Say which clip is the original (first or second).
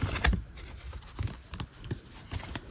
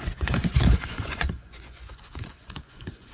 first